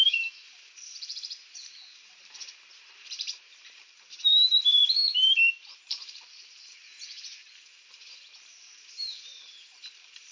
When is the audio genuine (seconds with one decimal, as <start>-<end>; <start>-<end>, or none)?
4.8-5.9